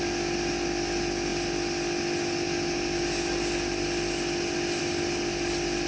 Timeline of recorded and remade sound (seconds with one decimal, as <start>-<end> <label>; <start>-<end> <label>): 0.0-5.9 recorded